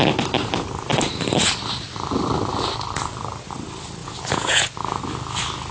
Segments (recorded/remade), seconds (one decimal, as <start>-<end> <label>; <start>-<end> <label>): 0.0-4.0 recorded; 4.0-4.7 remade; 4.7-5.7 recorded

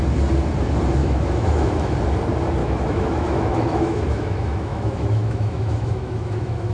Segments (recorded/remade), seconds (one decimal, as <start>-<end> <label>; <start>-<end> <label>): 0.0-1.0 recorded; 1.0-1.9 remade; 1.9-2.6 recorded; 2.6-6.7 remade

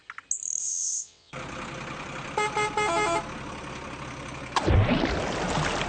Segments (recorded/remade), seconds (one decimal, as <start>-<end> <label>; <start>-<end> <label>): 0.0-0.6 recorded; 0.6-1.3 remade; 1.3-5.9 recorded

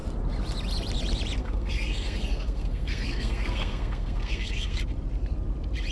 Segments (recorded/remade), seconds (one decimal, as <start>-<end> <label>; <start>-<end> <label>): 0.0-1.4 recorded; 1.4-4.8 remade; 4.8-5.9 recorded

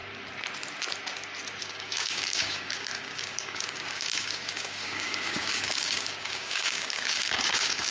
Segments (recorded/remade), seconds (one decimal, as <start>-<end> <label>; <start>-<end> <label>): 0.0-1.6 recorded; 1.6-7.9 remade

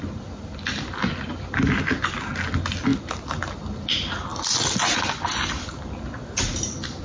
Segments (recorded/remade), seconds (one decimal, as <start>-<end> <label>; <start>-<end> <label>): 0.0-7.0 recorded